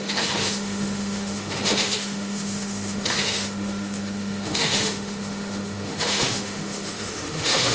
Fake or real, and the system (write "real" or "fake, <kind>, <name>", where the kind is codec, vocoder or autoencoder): fake, autoencoder, DAC-VAE